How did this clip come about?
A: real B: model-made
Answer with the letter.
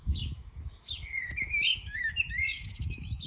B